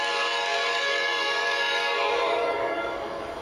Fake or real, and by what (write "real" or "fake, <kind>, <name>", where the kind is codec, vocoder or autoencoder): fake, codec, DAC